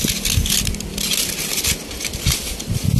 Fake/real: real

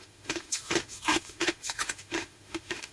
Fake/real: fake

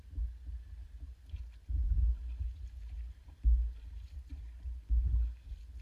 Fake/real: real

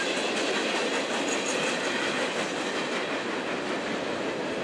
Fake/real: real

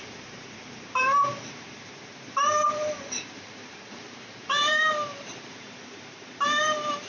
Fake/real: fake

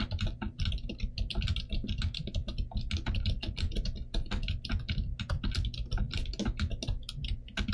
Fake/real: real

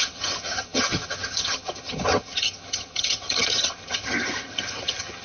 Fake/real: fake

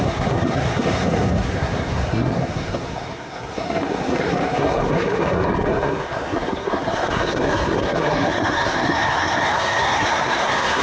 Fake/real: fake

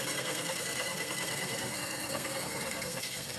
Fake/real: fake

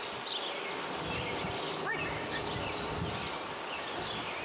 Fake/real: real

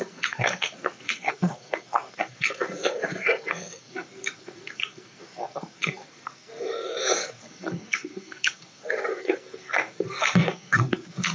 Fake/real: fake